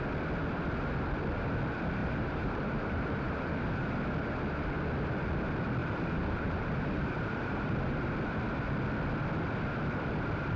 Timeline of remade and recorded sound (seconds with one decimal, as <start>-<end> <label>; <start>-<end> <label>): 0.0-2.0 recorded; 2.0-4.0 remade; 4.0-5.8 recorded; 5.8-7.9 remade; 7.9-10.6 recorded